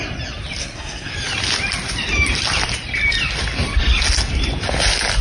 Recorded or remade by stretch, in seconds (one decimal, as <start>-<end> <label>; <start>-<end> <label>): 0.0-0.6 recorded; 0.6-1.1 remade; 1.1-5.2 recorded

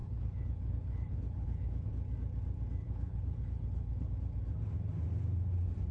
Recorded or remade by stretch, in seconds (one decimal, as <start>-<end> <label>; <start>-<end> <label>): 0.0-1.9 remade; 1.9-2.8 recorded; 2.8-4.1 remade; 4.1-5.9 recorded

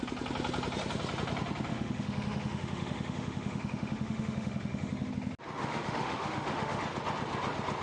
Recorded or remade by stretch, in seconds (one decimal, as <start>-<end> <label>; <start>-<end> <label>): 0.0-1.7 recorded; 1.7-5.1 remade; 5.1-5.6 recorded; 5.6-6.8 remade; 6.8-7.8 recorded

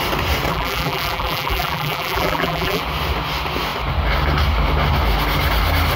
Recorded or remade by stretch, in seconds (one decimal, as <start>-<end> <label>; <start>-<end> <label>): 0.0-0.5 recorded; 0.5-2.8 remade; 2.8-6.0 recorded

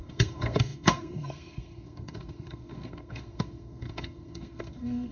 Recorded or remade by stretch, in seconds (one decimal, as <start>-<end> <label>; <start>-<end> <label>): 0.0-5.1 remade